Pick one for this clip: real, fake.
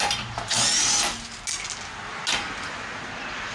real